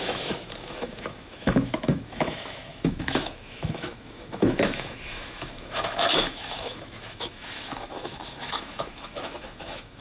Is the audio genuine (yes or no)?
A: no